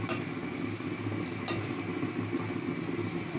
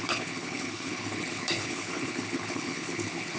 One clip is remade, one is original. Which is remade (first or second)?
second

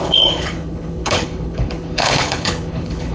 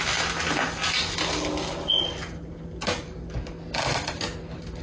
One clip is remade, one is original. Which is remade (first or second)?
first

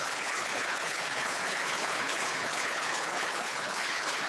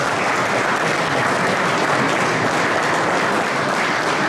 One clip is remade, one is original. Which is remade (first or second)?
first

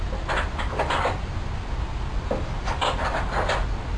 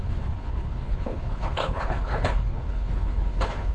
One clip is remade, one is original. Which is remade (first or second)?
second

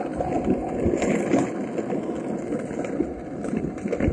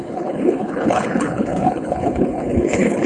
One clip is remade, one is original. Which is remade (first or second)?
second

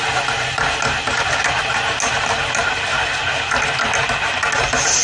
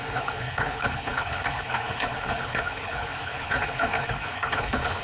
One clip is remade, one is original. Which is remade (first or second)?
second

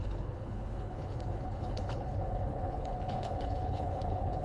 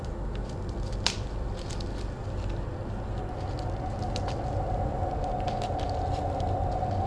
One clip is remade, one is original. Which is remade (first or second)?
first